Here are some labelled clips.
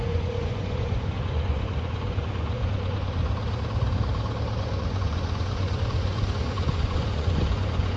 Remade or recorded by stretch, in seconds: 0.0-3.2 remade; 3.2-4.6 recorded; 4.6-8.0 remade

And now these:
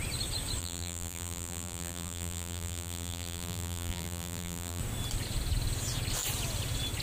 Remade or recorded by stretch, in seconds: 0.0-0.6 recorded; 0.6-4.8 remade; 4.8-7.0 recorded

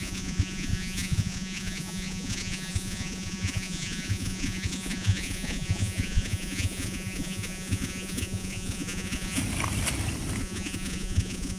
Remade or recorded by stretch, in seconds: 0.0-9.4 remade; 9.4-10.4 recorded; 10.4-11.6 remade

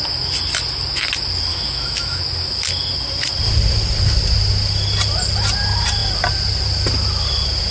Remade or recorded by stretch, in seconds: 0.0-1.5 recorded; 1.5-2.2 remade; 2.2-7.7 recorded

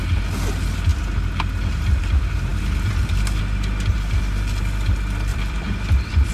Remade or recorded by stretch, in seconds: 0.0-2.5 recorded; 2.5-3.4 remade; 3.4-5.3 recorded; 5.3-6.3 remade

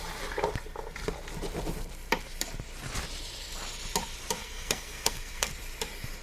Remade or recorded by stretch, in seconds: 0.0-4.4 recorded; 4.4-5.5 remade; 5.5-6.2 recorded

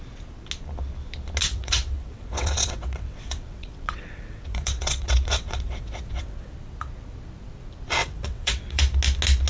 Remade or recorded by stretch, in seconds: 0.0-1.4 recorded; 1.4-6.5 remade; 6.5-8.0 recorded; 8.0-8.8 remade; 8.8-9.5 recorded

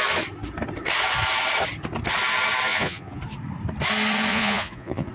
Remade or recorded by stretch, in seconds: 0.0-2.7 recorded; 2.7-3.2 remade; 3.2-4.3 recorded; 4.3-5.1 remade